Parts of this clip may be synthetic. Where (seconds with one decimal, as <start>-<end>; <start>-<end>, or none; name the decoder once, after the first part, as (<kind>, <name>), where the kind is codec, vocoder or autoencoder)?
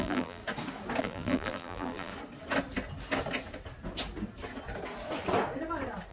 0.0-0.4 (vocoder, BigVGAN v2); 1.0-2.1